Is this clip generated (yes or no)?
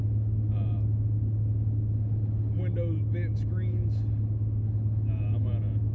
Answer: no